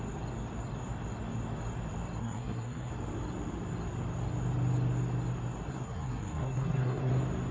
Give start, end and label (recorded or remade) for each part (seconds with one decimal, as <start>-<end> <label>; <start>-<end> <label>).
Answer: 0.0-2.2 recorded; 2.2-2.9 remade; 2.9-5.7 recorded; 5.7-7.1 remade; 7.1-7.5 recorded